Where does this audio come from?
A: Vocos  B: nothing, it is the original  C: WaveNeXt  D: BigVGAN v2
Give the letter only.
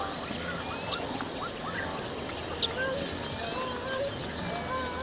B